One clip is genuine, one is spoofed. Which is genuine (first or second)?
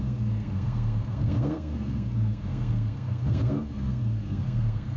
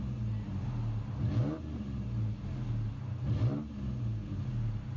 second